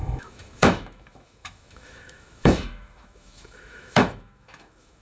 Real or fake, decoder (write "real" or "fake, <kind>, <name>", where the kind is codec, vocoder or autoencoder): fake, autoencoder, DAC-VAE